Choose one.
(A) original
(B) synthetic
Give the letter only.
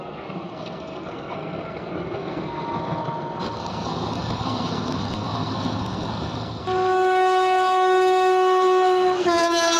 B